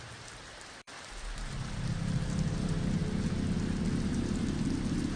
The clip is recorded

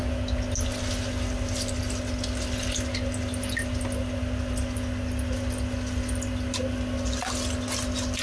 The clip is recorded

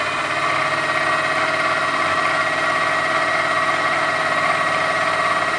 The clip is recorded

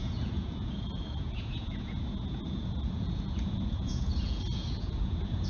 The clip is remade